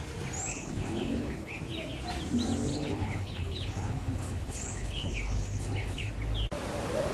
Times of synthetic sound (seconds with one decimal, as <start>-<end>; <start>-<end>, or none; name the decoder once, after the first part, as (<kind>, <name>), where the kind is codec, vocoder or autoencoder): 0.5-1.6 (codec, HILCodec); 2.7-6.1